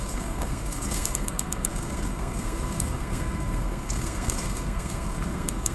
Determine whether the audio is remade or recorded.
remade